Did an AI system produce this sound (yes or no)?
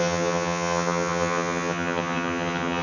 yes